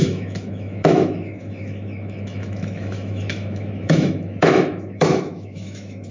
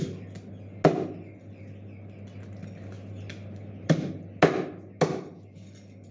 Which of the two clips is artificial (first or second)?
first